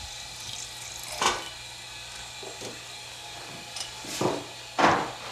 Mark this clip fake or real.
real